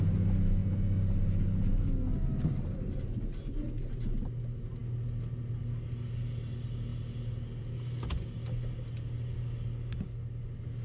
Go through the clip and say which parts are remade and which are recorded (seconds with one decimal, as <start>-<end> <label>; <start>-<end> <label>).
0.0-10.8 recorded